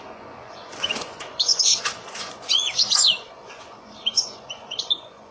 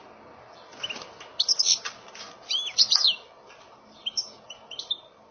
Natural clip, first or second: second